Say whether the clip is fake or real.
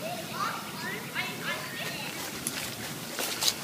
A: real